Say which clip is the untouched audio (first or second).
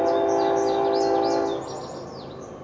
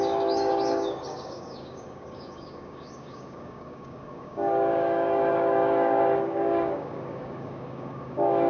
first